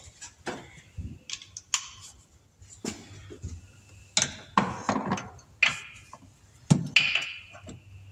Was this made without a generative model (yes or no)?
yes